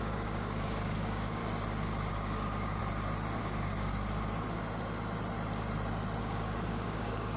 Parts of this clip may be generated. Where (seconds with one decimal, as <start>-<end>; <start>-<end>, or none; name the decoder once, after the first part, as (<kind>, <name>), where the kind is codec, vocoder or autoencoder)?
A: 0.0-1.4 (codec, DAC); 2.1-2.8; 3.4-3.9; 6.2-7.4